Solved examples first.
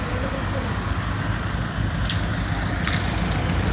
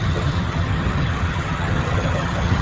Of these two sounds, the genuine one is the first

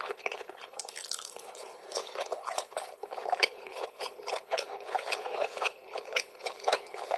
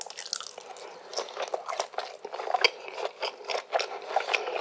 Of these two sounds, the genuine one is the second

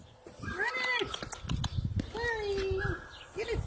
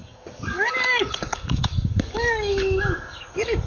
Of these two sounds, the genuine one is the first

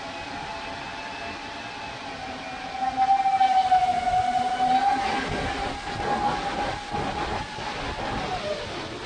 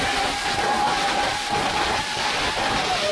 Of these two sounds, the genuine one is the first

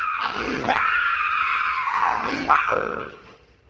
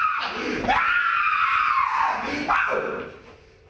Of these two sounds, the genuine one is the second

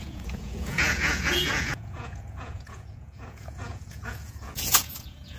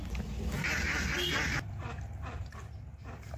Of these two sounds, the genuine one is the second